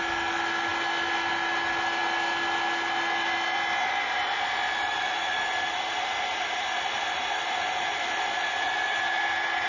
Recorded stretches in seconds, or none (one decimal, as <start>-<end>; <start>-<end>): 0.0-9.7